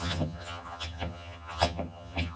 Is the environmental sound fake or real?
fake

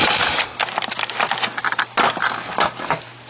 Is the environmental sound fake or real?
real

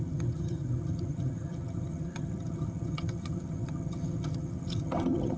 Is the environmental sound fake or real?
fake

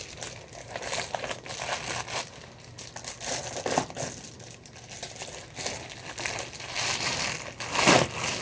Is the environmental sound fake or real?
real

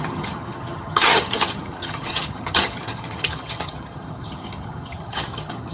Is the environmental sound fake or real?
fake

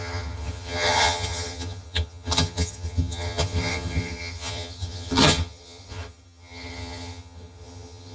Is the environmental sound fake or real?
fake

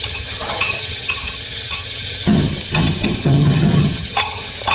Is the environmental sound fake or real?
fake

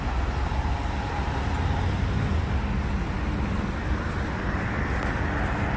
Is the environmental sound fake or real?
real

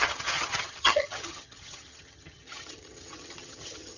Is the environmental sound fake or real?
fake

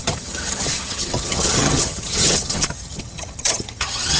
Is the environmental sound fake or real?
fake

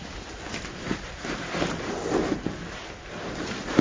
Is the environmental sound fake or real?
real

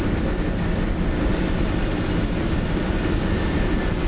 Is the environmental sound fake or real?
real